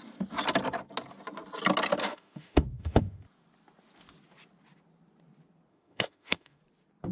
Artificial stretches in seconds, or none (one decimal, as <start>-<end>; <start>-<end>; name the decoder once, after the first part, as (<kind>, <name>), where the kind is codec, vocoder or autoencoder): 2.0-3.2 (autoencoder, DAC-VAE); 5.7-6.6

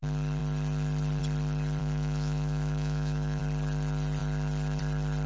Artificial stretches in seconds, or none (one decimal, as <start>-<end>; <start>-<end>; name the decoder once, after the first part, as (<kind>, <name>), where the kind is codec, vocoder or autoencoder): 1.8-3.4 (autoencoder, DAC-VAE)

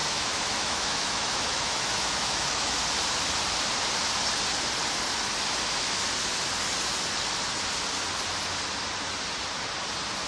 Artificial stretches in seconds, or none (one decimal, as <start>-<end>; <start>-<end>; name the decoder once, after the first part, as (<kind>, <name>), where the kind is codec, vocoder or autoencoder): 0.0-2.8 (autoencoder, DAC-VAE)

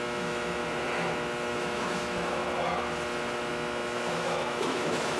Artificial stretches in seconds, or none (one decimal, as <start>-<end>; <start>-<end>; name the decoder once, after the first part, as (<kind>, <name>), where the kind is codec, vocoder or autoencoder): 0.0-0.6 (autoencoder, DAC-VAE); 1.5-2.4; 3.5-5.2

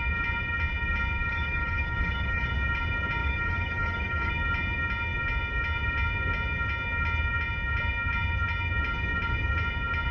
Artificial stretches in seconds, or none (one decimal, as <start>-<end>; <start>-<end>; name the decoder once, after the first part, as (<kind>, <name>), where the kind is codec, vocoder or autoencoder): 1.3-2.5 (autoencoder, DAC-VAE); 3.2-4.3